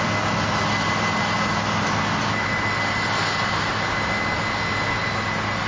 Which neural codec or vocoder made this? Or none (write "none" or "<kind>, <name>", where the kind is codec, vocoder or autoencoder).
none